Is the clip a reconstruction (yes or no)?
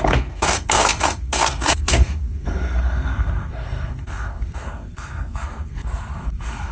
yes